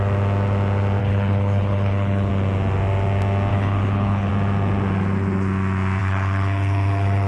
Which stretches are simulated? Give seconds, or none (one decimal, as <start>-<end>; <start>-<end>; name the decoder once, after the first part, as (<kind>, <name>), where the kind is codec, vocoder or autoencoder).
1.0-2.3 (codec, HILCodec); 3.5-4.3; 6.0-7.3